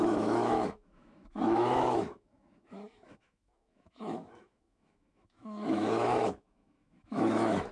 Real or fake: fake